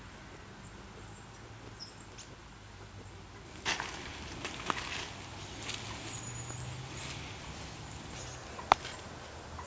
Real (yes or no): yes